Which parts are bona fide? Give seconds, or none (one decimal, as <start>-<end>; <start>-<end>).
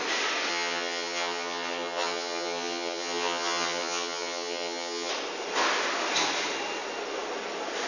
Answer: 0.0-0.5; 5.1-7.9